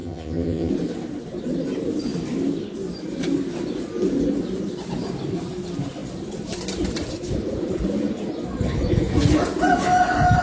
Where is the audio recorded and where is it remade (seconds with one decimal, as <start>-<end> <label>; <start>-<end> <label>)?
0.0-0.7 remade; 0.7-10.4 recorded